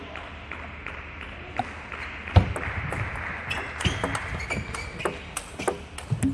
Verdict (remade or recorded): recorded